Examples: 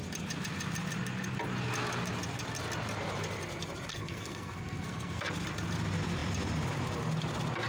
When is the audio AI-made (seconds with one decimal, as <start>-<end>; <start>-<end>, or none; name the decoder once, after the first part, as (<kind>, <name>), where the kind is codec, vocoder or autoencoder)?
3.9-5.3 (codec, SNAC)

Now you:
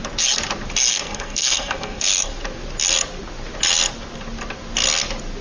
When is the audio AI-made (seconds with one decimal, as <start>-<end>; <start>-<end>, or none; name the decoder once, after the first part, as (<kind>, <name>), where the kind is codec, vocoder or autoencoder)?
0.9-2.3 (codec, SNAC)

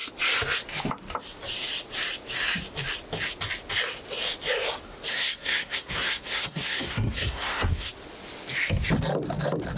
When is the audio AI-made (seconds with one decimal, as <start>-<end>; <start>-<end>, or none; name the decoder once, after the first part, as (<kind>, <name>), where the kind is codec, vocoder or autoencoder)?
5.1-7.9 (codec, SNAC)

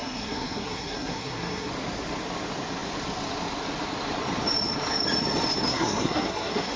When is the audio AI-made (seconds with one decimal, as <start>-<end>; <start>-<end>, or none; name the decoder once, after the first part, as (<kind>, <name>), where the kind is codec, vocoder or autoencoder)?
0.0-1.7 (codec, SNAC); 5.7-6.8

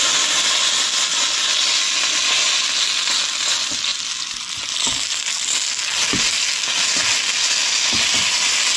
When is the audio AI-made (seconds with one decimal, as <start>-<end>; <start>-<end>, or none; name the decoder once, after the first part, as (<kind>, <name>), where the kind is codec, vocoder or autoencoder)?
none